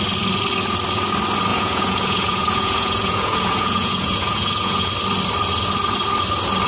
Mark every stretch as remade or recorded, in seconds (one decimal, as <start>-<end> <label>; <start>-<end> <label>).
0.0-1.5 recorded; 1.5-4.9 remade; 4.9-6.7 recorded